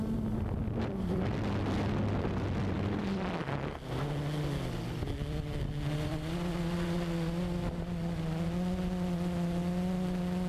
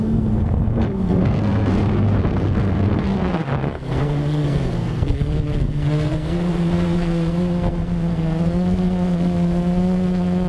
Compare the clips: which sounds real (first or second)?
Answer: first